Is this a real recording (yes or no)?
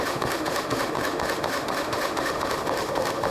no